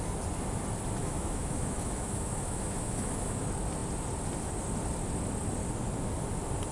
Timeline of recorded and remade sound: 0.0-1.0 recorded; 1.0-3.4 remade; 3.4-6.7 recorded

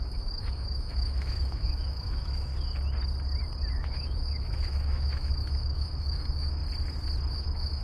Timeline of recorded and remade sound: 0.0-2.5 remade; 2.5-3.7 recorded; 3.7-6.6 remade; 6.6-7.3 recorded; 7.3-7.8 remade

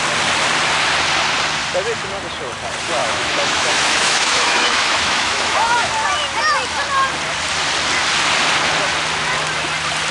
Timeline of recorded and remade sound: 0.0-3.0 recorded; 3.0-5.9 remade; 5.9-10.1 recorded

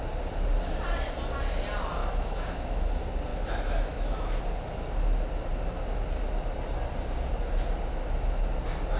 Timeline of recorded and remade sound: 0.0-2.0 recorded; 2.0-2.9 remade; 2.9-3.3 recorded; 3.3-4.4 remade; 4.4-9.0 recorded